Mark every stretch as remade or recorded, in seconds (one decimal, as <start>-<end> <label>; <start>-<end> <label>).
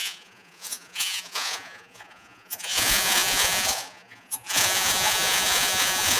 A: 0.0-6.2 remade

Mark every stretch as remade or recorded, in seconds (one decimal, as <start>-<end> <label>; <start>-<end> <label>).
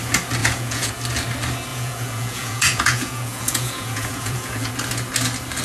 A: 0.0-0.4 recorded; 0.4-0.9 remade; 0.9-1.7 recorded; 1.7-4.7 remade; 4.7-5.6 recorded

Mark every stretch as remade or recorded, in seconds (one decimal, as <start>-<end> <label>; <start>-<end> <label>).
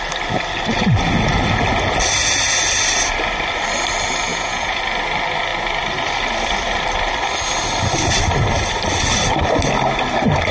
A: 0.0-4.3 recorded; 4.3-4.8 remade; 4.8-10.5 recorded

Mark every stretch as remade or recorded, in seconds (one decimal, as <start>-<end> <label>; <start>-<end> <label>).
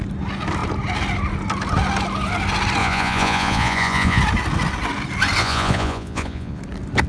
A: 0.0-2.8 recorded; 2.8-4.2 remade; 4.2-5.4 recorded; 5.4-6.6 remade; 6.6-7.1 recorded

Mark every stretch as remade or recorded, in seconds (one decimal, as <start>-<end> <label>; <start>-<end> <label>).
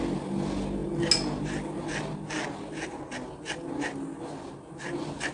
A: 0.0-5.3 recorded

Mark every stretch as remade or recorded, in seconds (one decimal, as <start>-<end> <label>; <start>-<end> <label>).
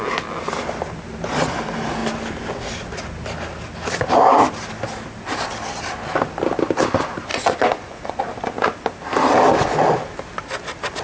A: 0.0-7.3 recorded; 7.3-8.2 remade; 8.2-11.0 recorded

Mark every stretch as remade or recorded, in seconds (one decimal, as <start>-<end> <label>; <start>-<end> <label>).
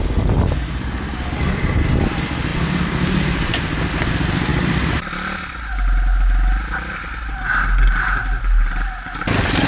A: 0.0-9.7 recorded